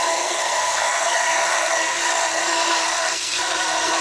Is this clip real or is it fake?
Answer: fake